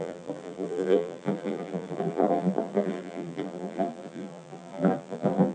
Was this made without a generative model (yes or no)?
no